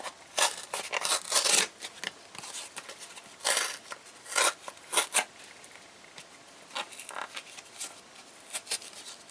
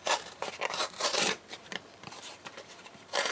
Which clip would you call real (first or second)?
first